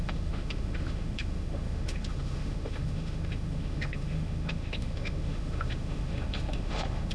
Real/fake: fake